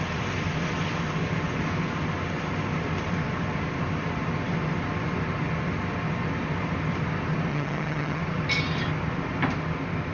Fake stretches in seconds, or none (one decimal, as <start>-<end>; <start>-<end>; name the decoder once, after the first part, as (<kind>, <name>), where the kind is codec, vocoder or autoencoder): 7.5-8.2 (vocoder, HiFi-GAN)